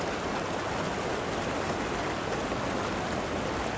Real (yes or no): yes